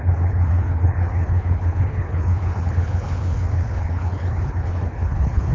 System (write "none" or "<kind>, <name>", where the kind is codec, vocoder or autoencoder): codec, HILCodec